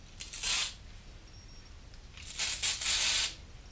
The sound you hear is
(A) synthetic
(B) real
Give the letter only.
B